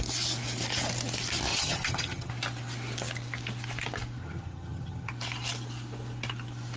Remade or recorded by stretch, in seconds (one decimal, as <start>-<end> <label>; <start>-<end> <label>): 0.0-1.5 recorded; 1.5-2.3 remade; 2.3-4.2 recorded; 4.2-5.1 remade; 5.1-6.8 recorded

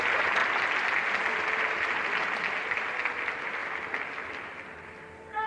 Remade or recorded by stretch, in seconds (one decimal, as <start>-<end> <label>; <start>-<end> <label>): 0.0-5.5 recorded

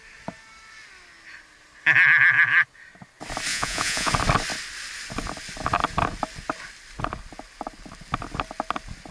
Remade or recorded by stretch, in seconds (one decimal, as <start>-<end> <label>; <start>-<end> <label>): 0.0-3.5 recorded; 3.5-4.1 remade; 4.1-9.1 recorded

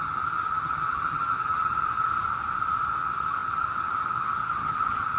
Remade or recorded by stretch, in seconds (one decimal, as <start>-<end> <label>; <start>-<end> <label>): 0.0-2.1 remade; 2.1-3.0 recorded; 3.0-5.2 remade

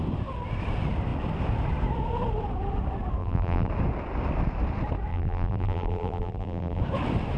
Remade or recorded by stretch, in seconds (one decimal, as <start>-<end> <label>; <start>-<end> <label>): 0.0-3.2 recorded; 3.2-3.7 remade; 3.7-5.1 recorded; 5.1-6.8 remade; 6.8-7.4 recorded

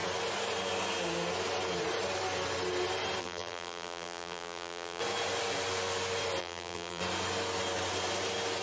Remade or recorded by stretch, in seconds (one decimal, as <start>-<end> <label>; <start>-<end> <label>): 0.0-3.2 recorded; 3.2-5.0 remade; 5.0-6.4 recorded; 6.4-7.0 remade; 7.0-8.6 recorded

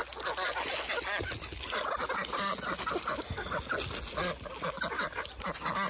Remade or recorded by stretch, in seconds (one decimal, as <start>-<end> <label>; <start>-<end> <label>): 0.0-5.9 recorded